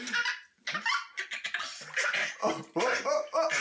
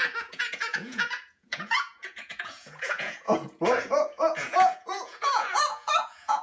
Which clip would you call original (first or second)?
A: first